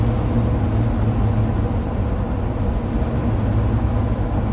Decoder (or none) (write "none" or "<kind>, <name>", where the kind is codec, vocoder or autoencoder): none